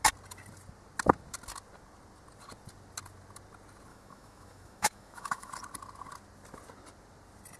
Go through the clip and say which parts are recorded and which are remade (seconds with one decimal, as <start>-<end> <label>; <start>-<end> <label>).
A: 0.0-3.9 recorded; 3.9-5.5 remade; 5.5-7.6 recorded